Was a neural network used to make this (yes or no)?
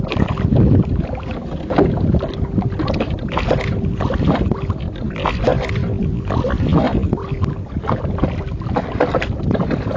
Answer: no